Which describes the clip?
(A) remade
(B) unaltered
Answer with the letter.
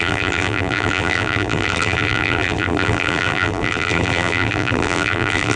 A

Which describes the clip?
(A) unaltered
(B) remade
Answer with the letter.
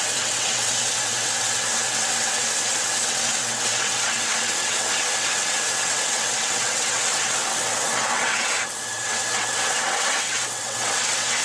B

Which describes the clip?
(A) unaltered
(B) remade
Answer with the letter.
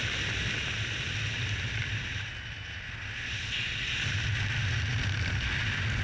A